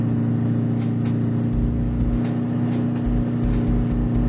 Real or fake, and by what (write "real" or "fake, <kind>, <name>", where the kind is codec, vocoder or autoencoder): real